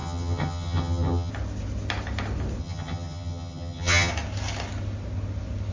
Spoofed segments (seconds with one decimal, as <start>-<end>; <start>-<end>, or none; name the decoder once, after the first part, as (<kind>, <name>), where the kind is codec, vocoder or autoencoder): 0.0-1.3 (vocoder, HiFi-GAN); 2.6-4.1